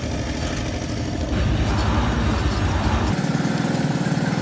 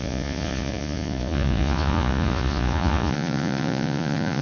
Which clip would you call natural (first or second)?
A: first